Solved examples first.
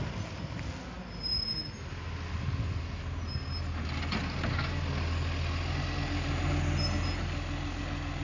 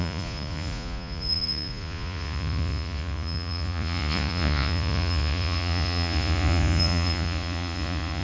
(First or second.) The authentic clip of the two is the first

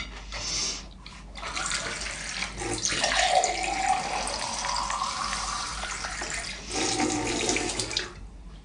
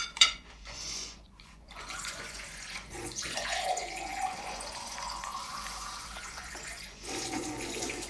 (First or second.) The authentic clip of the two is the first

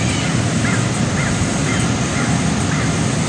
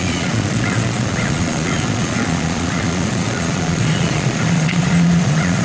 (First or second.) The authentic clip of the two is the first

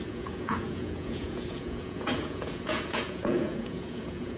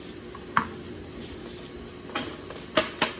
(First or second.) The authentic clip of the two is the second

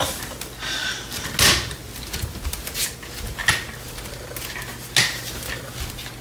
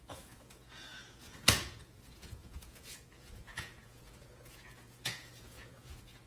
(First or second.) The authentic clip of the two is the first